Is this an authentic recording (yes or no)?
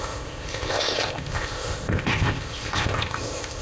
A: no